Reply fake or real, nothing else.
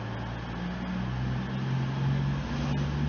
real